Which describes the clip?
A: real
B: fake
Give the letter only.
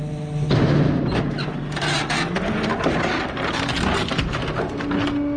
A